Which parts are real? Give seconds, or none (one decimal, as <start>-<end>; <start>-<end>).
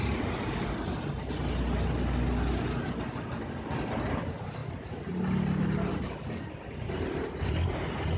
0.0-8.2